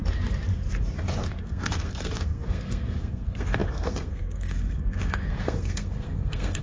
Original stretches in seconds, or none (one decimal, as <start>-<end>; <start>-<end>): 0.0-1.4